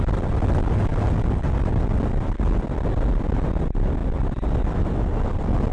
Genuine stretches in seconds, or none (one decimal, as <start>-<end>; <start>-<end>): 0.0-5.7